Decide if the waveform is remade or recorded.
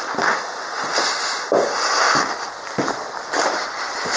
recorded